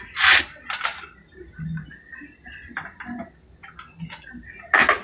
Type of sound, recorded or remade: recorded